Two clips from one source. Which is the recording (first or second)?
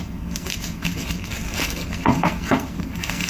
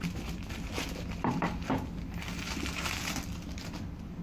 second